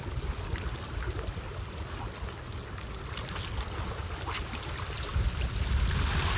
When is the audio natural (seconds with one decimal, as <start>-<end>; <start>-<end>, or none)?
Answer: 0.0-6.4